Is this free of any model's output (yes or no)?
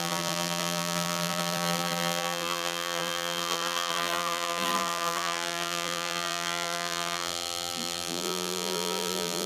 no